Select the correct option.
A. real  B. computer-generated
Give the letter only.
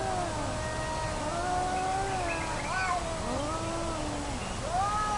A